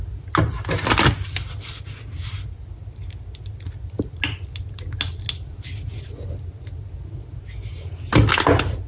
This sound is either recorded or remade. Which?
recorded